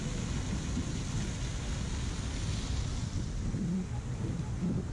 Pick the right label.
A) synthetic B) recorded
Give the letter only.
B